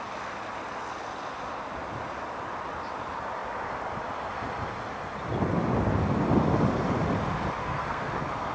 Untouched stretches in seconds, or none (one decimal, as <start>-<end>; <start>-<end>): 0.0-7.6; 8.1-8.5